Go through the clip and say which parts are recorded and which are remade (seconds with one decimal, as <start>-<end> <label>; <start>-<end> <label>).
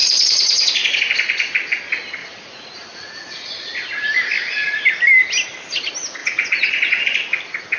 0.0-1.0 remade; 1.0-2.2 recorded; 2.2-3.9 remade; 3.9-6.2 recorded; 6.2-7.0 remade; 7.0-7.8 recorded